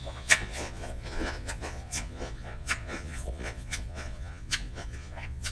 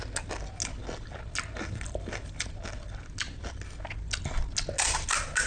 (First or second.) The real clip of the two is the second